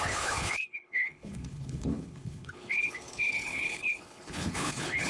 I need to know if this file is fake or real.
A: fake